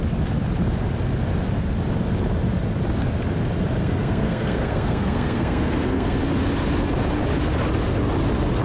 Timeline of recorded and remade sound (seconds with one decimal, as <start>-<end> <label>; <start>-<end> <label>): 0.0-3.8 recorded; 3.8-6.2 remade; 6.2-8.6 recorded